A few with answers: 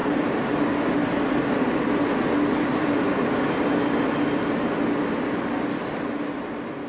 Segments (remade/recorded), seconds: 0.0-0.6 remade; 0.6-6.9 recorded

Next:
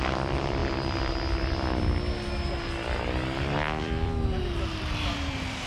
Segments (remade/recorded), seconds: 0.0-0.6 remade; 0.6-3.8 recorded; 3.8-5.7 remade

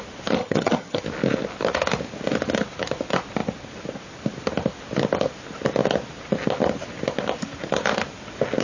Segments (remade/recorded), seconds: 0.0-0.4 recorded; 0.4-1.0 remade; 1.0-8.6 recorded

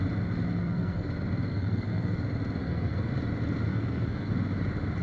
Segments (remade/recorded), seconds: 0.0-0.6 recorded; 0.6-1.1 remade; 1.1-1.5 recorded; 1.5-2.2 remade; 2.2-2.6 recorded; 2.6-3.1 remade; 3.1-3.7 recorded; 3.7-4.3 remade; 4.3-5.0 recorded